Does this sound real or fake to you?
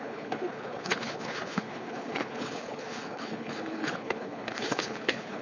fake